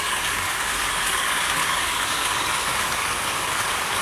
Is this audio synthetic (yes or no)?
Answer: yes